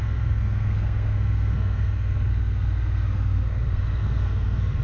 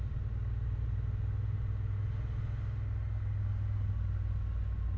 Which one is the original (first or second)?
second